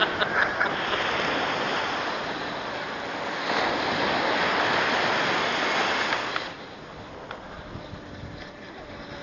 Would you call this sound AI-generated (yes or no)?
no